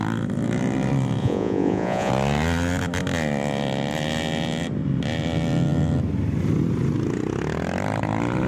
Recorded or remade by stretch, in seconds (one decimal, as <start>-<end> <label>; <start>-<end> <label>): 0.0-1.2 recorded; 1.2-2.1 remade; 2.1-8.5 recorded